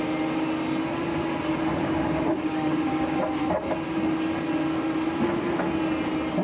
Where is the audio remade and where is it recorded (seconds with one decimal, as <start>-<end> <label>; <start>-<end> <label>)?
0.0-1.8 recorded; 1.8-3.2 remade; 3.2-6.4 recorded

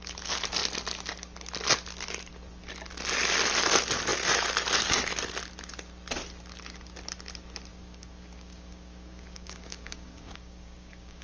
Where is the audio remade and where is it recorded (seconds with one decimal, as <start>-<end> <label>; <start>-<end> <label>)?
0.0-7.7 recorded; 7.7-11.2 remade

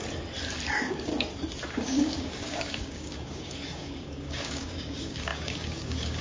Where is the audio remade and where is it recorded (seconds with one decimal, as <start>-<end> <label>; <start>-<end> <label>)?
0.0-0.7 recorded; 0.7-1.1 remade; 1.1-1.7 recorded; 1.7-6.2 remade